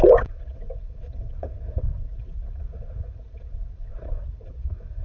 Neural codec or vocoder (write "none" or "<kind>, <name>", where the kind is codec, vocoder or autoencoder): vocoder, WaveNeXt